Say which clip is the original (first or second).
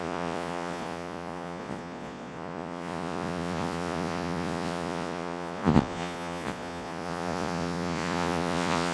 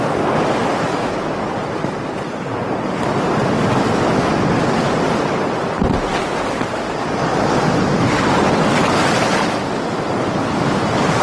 second